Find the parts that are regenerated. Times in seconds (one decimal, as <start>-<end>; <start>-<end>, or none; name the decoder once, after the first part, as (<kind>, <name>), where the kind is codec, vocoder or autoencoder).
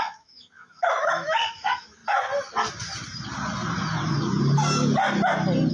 0.0-2.0 (autoencoder, DAC-VAE)